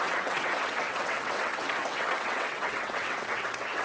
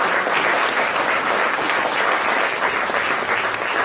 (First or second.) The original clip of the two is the second